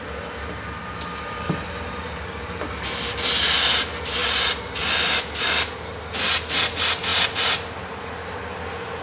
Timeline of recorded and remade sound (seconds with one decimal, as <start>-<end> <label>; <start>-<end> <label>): 0.0-9.0 recorded